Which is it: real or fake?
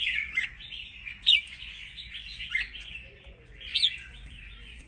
fake